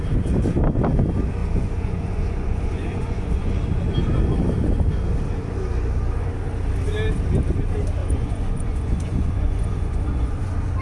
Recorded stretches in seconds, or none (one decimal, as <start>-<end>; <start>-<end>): 0.0-1.4; 3.5-8.0; 10.4-10.8